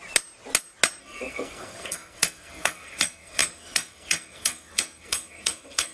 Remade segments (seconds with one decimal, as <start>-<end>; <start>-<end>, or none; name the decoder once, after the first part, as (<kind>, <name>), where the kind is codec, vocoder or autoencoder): 1.0-5.9 (codec, SNAC)